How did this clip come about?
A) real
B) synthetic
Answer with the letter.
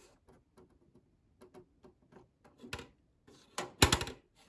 A